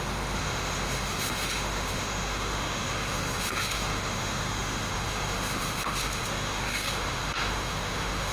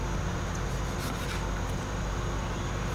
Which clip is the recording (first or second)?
second